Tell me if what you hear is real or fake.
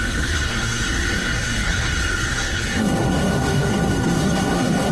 fake